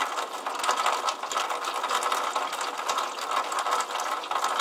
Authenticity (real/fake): real